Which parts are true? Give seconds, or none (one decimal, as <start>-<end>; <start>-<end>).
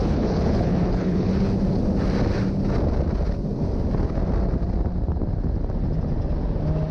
1.3-6.9